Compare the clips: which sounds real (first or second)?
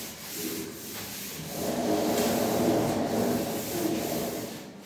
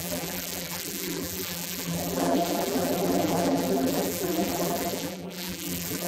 first